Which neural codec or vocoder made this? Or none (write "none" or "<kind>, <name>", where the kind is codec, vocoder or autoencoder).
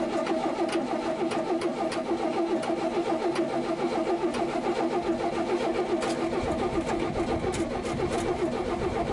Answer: none